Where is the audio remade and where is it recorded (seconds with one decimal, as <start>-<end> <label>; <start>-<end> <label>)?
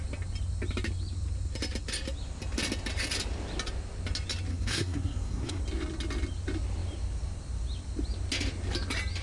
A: 0.0-4.5 recorded; 4.5-5.6 remade; 5.6-9.2 recorded